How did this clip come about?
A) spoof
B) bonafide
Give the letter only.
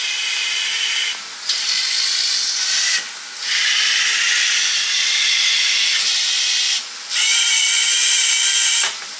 B